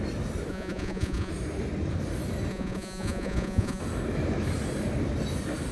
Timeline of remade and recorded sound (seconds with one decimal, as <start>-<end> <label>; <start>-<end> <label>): 0.0-0.5 recorded; 0.5-1.3 remade; 1.3-2.5 recorded; 2.5-3.8 remade; 3.8-5.7 recorded